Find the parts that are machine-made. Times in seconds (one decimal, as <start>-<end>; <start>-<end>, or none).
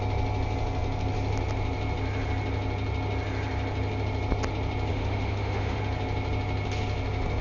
4.9-5.8